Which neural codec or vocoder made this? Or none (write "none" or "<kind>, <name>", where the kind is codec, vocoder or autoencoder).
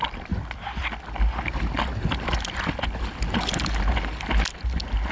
none